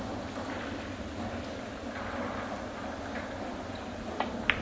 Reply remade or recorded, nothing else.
recorded